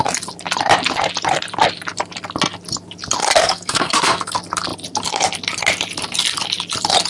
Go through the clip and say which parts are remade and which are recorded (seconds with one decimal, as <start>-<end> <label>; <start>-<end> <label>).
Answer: 0.0-3.4 recorded; 3.4-4.3 remade; 4.3-7.1 recorded